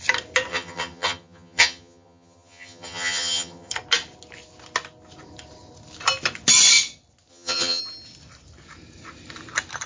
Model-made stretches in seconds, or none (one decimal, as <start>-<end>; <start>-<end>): 0.5-3.7; 7.3-7.8